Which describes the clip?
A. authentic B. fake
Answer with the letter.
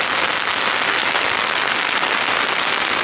A